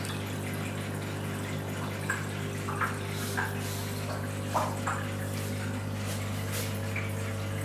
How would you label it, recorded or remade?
recorded